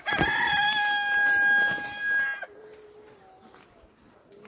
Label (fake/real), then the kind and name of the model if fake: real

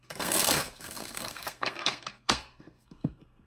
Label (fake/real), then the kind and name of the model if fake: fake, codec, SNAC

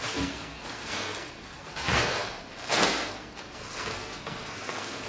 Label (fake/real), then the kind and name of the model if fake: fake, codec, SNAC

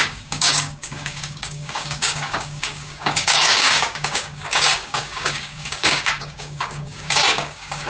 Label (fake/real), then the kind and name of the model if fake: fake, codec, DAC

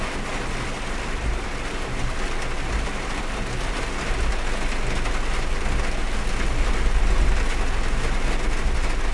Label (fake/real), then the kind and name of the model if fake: real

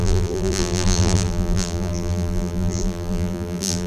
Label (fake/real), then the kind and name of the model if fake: fake, vocoder, BigVGAN v2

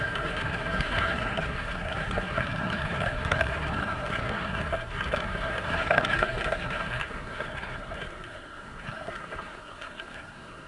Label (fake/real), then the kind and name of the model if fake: fake, codec, SNAC